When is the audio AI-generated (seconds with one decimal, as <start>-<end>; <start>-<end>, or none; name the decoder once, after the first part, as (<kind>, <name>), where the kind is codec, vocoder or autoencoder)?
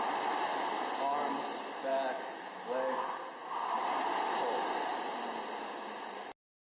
none